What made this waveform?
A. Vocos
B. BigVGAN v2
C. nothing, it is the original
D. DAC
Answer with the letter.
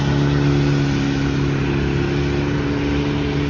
C